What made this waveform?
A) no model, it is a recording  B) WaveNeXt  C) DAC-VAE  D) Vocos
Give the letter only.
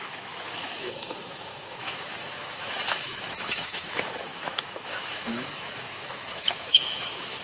C